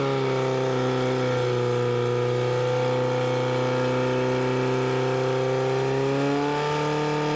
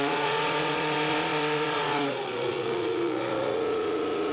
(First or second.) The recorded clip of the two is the first